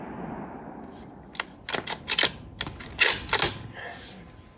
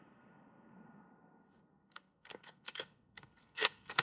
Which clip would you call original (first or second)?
first